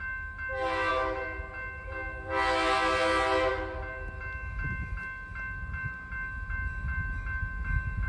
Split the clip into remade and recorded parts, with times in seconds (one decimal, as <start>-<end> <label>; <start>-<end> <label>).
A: 0.0-8.1 recorded